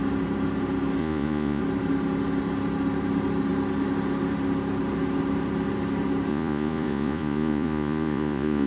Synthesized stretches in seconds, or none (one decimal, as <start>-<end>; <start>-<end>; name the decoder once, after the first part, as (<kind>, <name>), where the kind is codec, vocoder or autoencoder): 1.0-1.6 (vocoder, Vocos); 6.3-8.7